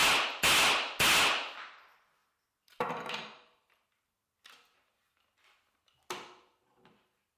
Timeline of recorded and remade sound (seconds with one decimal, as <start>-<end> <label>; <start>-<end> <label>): 0.0-7.4 recorded